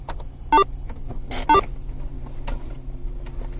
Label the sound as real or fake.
real